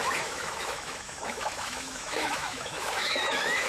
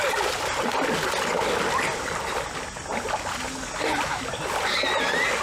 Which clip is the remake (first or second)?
first